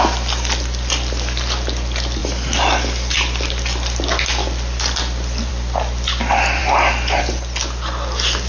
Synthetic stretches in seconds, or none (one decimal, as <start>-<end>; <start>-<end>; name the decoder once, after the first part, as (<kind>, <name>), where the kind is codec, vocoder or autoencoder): none